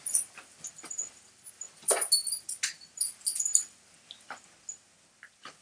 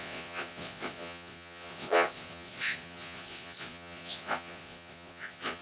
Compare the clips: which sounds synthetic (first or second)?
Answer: second